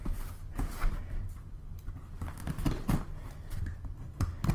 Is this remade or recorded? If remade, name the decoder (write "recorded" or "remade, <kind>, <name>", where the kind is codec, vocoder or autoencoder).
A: recorded